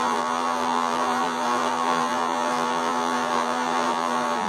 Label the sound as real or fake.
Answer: fake